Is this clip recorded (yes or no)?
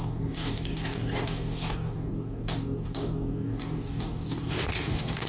no